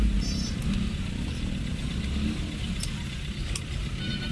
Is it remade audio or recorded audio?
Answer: recorded